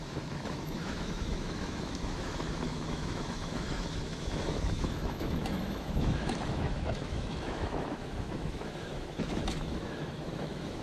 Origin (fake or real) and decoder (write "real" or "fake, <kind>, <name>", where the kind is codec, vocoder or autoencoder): fake, autoencoder, DAC-VAE